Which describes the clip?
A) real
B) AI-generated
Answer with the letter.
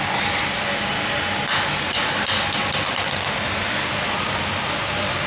A